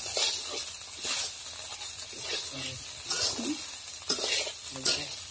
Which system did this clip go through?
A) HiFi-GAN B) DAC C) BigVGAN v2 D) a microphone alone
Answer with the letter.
D